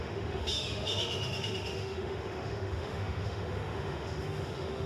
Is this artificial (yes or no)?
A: yes